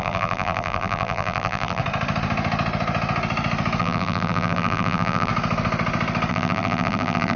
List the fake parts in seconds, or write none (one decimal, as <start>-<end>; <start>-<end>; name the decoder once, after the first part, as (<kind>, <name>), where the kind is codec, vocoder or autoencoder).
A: 0.0-1.8 (vocoder, BigVGAN v2); 3.8-5.3; 6.3-7.4